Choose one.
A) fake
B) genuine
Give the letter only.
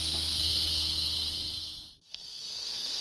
A